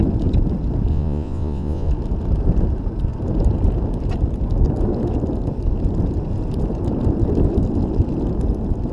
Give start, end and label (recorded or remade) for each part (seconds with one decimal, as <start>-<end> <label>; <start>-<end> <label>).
0.0-0.9 recorded; 0.9-1.9 remade; 1.9-8.9 recorded